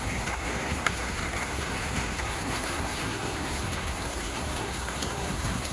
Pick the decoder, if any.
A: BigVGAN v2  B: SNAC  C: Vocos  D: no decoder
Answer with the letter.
B